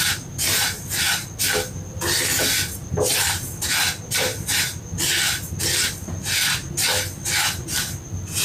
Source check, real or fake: real